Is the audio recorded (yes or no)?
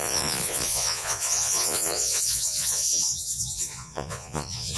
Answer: no